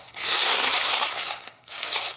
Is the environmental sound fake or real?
fake